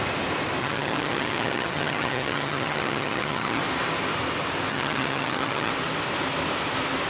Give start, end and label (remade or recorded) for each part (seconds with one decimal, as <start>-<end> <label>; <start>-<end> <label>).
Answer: 0.0-0.6 recorded; 0.6-3.6 remade; 3.6-4.7 recorded; 4.7-5.7 remade; 5.7-7.1 recorded